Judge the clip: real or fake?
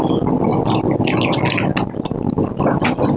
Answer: real